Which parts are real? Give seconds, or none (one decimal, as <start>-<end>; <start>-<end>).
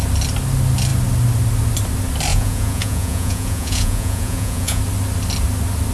0.0-2.3; 4.8-5.9